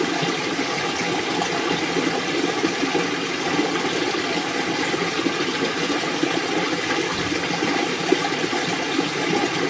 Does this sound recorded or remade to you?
recorded